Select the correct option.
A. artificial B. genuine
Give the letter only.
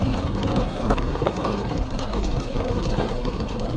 A